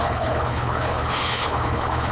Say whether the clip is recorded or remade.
remade